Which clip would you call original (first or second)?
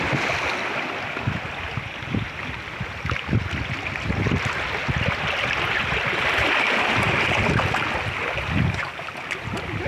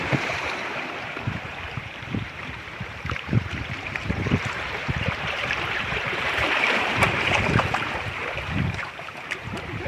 first